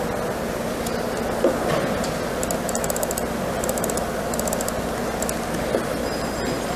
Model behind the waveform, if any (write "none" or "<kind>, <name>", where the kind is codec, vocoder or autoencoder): none